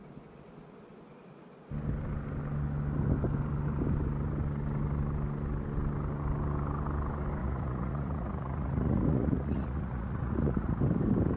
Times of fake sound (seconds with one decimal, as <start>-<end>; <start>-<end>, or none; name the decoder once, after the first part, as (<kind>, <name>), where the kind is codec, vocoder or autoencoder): 7.4-10.8 (vocoder, Vocos)

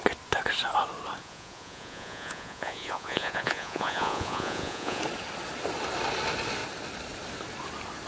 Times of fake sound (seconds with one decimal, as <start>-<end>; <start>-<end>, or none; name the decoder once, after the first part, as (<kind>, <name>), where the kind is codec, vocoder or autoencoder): 1.2-5.0 (vocoder, Vocos)

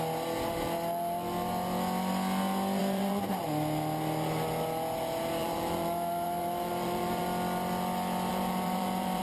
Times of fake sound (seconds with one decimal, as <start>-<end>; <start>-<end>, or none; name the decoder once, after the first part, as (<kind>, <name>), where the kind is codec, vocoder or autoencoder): 2.8-3.4 (vocoder, BigVGAN v2); 5.4-7.2; 8.3-9.2

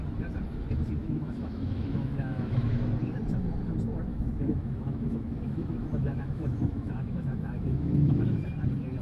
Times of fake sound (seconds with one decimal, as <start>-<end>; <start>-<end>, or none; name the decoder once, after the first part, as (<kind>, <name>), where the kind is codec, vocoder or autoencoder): 1.0-2.9 (autoencoder, DAC-VAE); 4.1-8.4

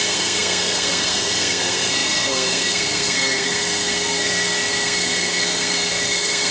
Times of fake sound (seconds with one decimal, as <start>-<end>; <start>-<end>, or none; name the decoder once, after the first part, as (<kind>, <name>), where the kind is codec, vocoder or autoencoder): 0.0-6.5 (codec, SNAC)

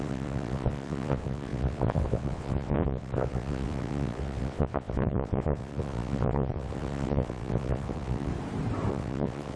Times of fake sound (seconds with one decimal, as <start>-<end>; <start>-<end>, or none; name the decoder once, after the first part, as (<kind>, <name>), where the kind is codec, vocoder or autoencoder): 0.0-8.3 (vocoder, WaveNeXt); 8.9-9.6

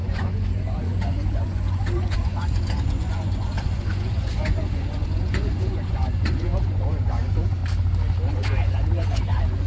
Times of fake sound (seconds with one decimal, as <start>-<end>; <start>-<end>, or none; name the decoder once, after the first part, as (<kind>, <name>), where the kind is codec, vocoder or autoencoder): 0.0-7.6 (vocoder, Vocos); 8.3-9.7

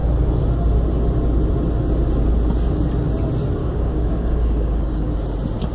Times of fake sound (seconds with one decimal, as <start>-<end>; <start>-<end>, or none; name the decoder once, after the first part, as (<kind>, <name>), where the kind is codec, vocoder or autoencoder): 3.6-5.1 (codec, DAC)